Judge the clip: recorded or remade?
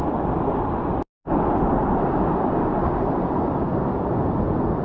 recorded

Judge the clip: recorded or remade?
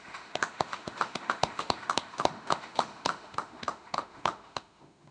remade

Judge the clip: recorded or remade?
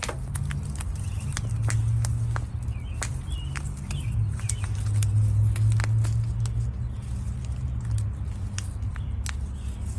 recorded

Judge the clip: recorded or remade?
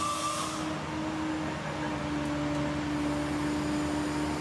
recorded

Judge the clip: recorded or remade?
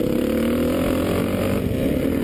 recorded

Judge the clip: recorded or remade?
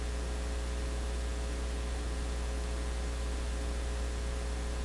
recorded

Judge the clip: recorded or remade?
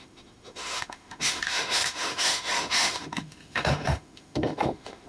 remade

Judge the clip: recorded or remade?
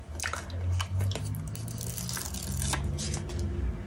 recorded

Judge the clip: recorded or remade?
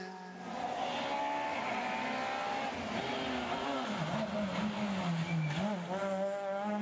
recorded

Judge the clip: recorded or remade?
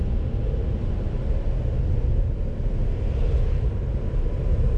recorded